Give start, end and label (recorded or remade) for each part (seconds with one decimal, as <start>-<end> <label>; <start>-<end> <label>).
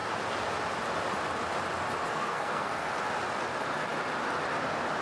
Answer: 0.0-2.0 recorded; 2.0-2.9 remade; 2.9-5.0 recorded